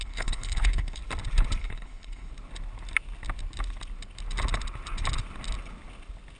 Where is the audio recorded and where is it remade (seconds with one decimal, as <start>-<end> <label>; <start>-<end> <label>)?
0.0-1.0 remade; 1.0-1.6 recorded; 1.6-2.3 remade; 2.3-6.4 recorded

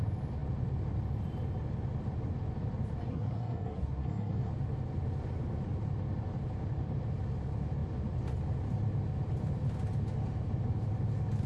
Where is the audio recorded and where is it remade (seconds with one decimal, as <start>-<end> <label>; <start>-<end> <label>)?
0.0-3.1 recorded; 3.1-4.5 remade; 4.5-11.5 recorded

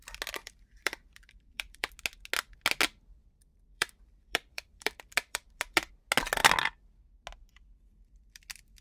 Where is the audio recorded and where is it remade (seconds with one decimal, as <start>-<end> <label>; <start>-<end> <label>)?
0.0-0.4 recorded; 0.4-1.9 remade; 1.9-3.5 recorded; 3.5-5.9 remade; 5.9-8.8 recorded

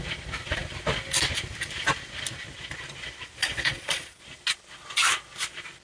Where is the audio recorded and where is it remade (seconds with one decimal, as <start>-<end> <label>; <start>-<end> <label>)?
0.0-3.4 recorded; 3.4-4.2 remade; 4.2-5.8 recorded